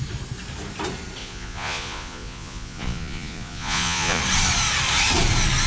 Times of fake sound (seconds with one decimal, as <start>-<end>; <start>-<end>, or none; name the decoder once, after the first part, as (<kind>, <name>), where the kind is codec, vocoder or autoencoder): 1.2-4.2 (vocoder, Vocos)

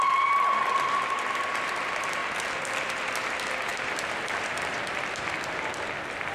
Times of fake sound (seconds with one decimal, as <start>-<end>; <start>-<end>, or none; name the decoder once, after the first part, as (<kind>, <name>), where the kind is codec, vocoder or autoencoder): 3.7-5.7 (vocoder, BigVGAN v2)

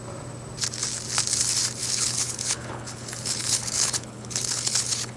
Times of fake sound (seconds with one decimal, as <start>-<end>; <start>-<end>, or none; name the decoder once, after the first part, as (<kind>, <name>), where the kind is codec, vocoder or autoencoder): 1.8-5.2 (codec, HILCodec)

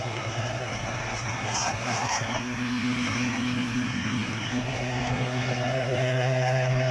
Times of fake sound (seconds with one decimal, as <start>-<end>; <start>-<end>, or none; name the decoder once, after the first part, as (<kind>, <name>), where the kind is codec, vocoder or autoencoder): 0.0-6.9 (codec, SNAC)

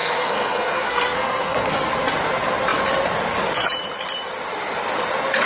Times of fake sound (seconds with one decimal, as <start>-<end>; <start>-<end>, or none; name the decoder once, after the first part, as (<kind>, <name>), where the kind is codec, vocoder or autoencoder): 0.0-1.9 (codec, SNAC)

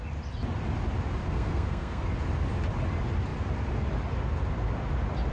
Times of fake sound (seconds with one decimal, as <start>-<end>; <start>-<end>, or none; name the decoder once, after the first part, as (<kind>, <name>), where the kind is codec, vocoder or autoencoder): 1.2-2.1 (codec, SNAC)